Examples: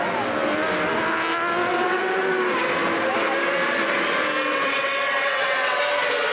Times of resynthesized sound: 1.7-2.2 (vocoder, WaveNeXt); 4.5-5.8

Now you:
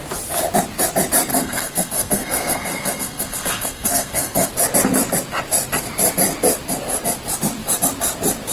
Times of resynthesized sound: 1.3-4.5 (codec, SNAC)

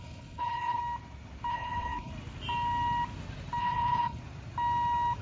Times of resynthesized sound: 0.0-0.8 (codec, HILCodec); 1.5-2.1; 3.6-4.2

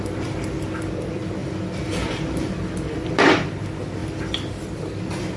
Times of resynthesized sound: 1.4-3.1 (vocoder, BigVGAN v2)

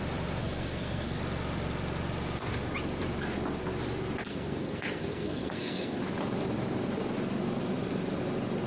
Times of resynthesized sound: 0.4-1.2 (codec, SNAC); 4.3-6.0

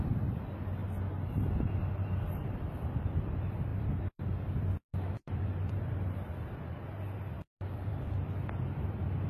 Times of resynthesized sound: 0.0-0.8 (vocoder, BigVGAN v2); 1.3-9.3

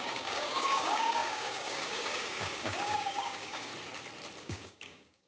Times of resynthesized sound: 0.0-3.7 (codec, DAC); 4.4-5.3

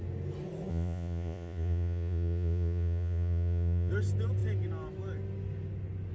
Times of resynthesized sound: 0.7-3.9 (vocoder, Vocos)